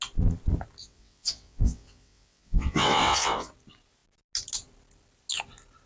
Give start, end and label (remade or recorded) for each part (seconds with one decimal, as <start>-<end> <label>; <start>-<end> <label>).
0.0-0.8 recorded; 0.8-3.5 remade; 3.5-5.9 recorded